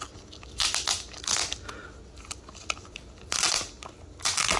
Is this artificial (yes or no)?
no